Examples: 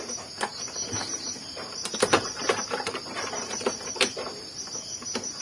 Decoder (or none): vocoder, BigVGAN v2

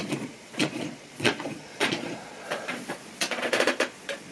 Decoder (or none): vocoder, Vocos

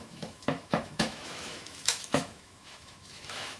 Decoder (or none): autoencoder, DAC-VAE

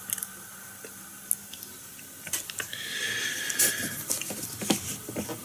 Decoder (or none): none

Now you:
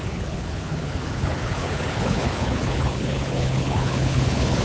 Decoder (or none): codec, HILCodec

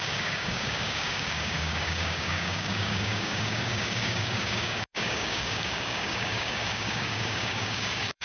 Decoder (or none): codec, DAC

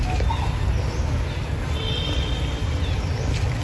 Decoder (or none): none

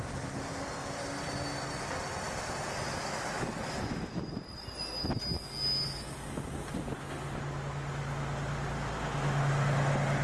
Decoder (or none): none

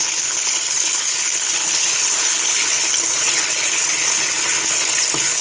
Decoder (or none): codec, HILCodec